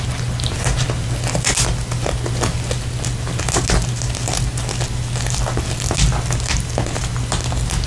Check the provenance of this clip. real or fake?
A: real